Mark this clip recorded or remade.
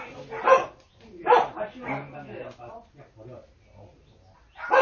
recorded